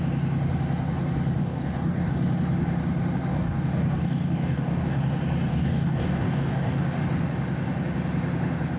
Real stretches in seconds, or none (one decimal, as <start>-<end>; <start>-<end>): 0.0-1.4; 2.1-3.3; 5.0-5.5; 7.0-8.8